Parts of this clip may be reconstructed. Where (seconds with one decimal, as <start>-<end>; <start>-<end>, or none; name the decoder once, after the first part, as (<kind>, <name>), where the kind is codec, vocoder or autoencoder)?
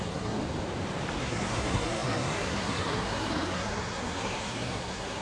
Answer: 0.0-0.4 (codec, SNAC); 1.2-5.2